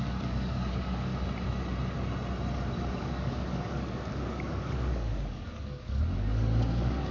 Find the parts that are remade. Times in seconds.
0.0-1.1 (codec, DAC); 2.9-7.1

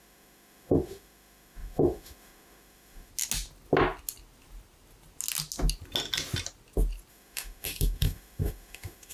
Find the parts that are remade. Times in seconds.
0.0-3.1 (autoencoder, DAC-VAE); 7.1-9.1